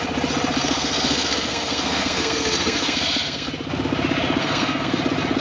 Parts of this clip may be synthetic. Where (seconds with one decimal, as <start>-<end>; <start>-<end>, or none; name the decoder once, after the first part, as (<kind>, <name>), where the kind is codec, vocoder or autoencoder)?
0.6-3.5 (codec, SNAC); 4.4-5.0